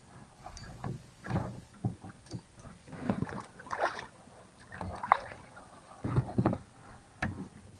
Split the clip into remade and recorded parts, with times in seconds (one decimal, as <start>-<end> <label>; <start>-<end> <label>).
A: 0.0-0.6 recorded; 0.6-4.2 remade; 4.2-4.9 recorded; 4.9-5.9 remade; 5.9-7.8 recorded